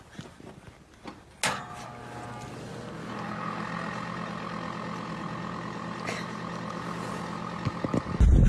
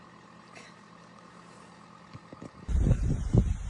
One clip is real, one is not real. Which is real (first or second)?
first